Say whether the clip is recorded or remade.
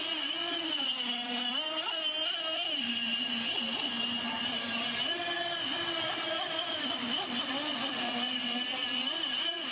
recorded